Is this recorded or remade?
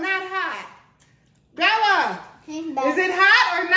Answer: recorded